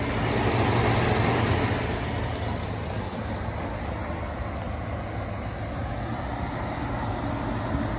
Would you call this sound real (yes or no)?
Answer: yes